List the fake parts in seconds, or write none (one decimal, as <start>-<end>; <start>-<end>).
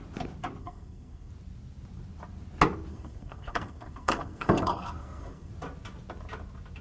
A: 0.6-1.3; 2.9-5.5